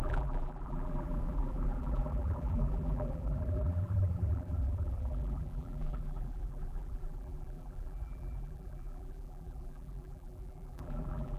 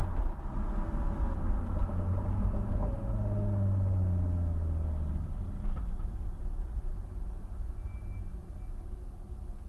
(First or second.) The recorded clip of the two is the second